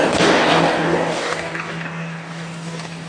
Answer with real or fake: fake